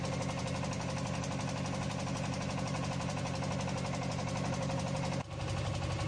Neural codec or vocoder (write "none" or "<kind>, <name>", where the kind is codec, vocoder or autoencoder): none